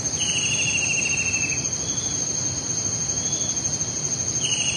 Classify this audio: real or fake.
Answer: real